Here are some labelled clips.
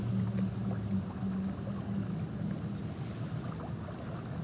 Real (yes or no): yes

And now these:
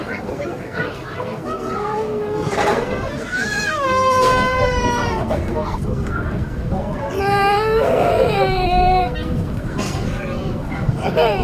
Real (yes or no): no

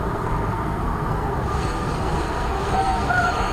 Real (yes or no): no